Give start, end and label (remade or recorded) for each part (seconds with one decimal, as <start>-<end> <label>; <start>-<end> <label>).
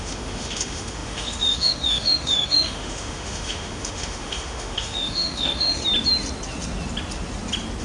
0.0-5.8 remade; 5.8-7.8 recorded